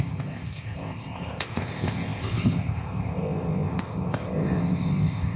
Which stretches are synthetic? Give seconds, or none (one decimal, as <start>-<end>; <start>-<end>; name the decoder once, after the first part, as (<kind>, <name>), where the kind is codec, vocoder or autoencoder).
0.0-5.4 (codec, ZipCodec)